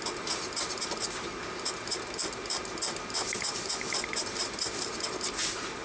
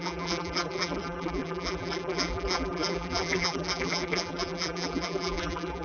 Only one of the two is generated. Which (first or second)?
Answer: second